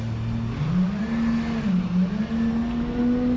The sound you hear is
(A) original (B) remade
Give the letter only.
A